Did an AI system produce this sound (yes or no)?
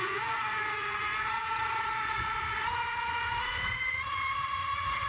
yes